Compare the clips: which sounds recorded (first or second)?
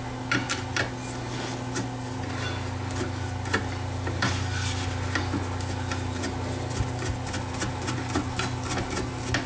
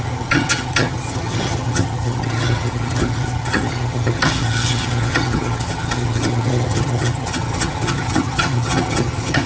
first